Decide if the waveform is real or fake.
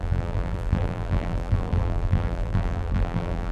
fake